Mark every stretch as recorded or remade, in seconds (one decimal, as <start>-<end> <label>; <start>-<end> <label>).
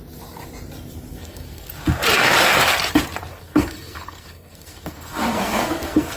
0.0-1.1 recorded; 1.1-1.7 remade; 1.7-3.3 recorded; 3.3-6.2 remade